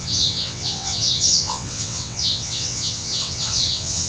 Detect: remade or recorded remade